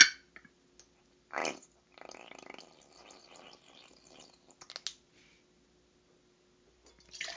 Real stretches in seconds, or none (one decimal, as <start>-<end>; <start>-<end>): 0.0-7.4